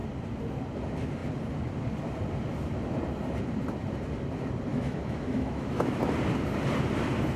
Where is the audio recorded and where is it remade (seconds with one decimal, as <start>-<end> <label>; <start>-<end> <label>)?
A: 0.0-4.7 recorded; 4.7-6.0 remade; 6.0-7.4 recorded